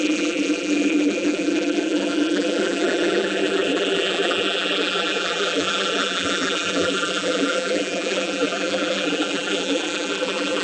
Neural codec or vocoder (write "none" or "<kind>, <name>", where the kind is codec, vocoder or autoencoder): vocoder, BigVGAN v2